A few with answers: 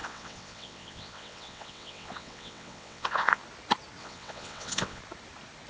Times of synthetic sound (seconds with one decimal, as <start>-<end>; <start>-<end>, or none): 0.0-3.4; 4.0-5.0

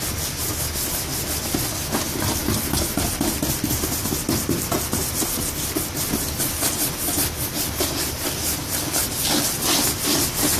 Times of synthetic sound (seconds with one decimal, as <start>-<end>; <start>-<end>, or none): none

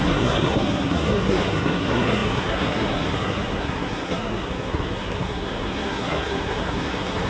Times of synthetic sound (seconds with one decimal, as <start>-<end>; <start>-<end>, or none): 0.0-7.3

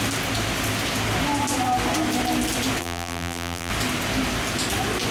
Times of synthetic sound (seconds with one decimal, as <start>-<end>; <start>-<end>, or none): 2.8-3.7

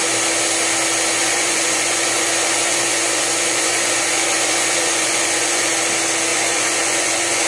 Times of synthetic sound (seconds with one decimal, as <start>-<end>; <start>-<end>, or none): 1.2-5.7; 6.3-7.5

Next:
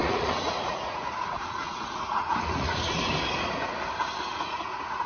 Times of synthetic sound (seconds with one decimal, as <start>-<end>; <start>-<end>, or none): 0.0-3.1; 4.3-5.1